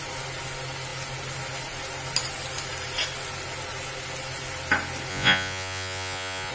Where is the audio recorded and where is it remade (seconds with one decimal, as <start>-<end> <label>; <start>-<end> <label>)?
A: 0.0-5.1 recorded; 5.1-6.5 remade